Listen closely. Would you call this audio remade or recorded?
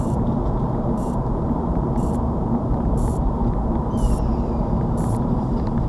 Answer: remade